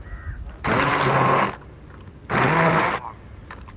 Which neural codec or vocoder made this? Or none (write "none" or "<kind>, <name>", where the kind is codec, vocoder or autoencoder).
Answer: none